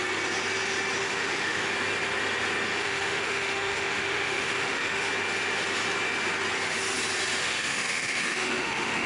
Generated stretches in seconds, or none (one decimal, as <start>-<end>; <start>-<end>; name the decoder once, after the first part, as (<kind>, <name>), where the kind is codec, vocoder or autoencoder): 1.0-1.7 (autoencoder, DAC-VAE); 2.8-5.1; 7.4-9.1

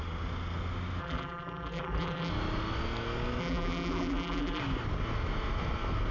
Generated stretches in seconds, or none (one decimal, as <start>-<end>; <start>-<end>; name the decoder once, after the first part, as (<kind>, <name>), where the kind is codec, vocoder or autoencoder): 1.0-2.3 (vocoder, BigVGAN v2); 3.4-4.6

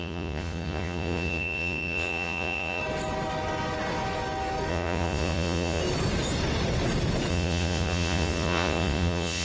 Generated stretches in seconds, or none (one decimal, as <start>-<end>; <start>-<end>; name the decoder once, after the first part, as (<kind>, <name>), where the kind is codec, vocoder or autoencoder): 0.0-2.8 (vocoder, Vocos); 4.7-5.8; 7.3-9.4

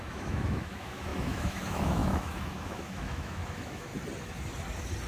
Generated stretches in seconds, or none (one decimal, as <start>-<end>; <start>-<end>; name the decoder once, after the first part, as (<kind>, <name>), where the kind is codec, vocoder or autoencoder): 0.0-3.9 (autoencoder, DAC-VAE)

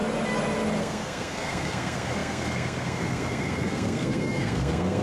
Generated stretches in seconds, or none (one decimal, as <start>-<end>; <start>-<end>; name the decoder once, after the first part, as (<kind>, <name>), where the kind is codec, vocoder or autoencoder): 0.8-5.0 (codec, SNAC)

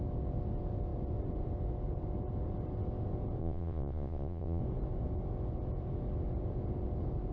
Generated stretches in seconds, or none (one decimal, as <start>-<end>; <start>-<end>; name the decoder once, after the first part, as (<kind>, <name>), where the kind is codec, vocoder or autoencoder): 3.4-4.6 (vocoder, Vocos)